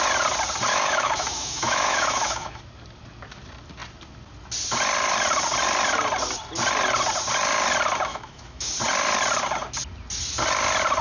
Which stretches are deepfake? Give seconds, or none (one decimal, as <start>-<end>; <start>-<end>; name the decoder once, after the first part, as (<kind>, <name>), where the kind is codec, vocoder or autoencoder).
0.7-2.6 (autoencoder, DAC-VAE); 8.1-8.7